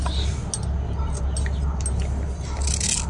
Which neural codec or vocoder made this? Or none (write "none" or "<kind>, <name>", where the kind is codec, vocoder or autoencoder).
none